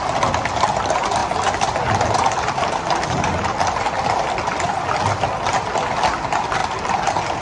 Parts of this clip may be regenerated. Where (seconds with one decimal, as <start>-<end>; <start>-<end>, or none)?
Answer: none